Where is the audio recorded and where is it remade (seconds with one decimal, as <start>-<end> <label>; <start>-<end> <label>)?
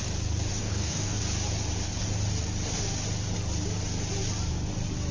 0.0-0.5 recorded; 0.5-1.2 remade; 1.2-5.1 recorded